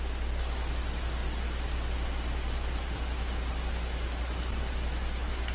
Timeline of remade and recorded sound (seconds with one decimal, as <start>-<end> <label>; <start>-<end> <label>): 0.0-5.5 recorded